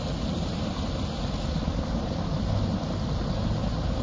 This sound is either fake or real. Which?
real